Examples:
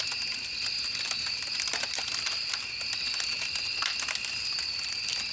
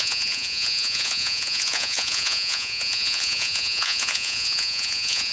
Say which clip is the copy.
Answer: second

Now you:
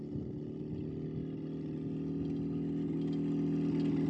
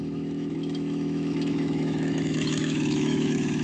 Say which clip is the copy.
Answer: second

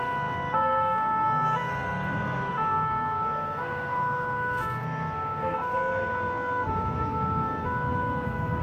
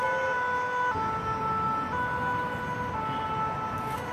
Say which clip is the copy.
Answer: first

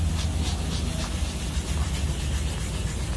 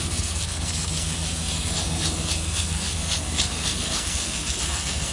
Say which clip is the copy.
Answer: second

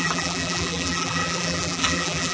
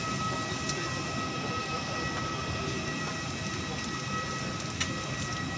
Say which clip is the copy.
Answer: first